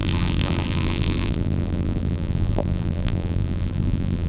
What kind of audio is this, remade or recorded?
remade